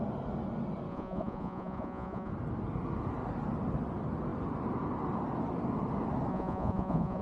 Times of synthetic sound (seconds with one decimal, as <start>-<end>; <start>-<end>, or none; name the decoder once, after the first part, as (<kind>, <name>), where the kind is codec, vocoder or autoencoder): 0.9-2.3 (vocoder, Vocos); 6.3-7.2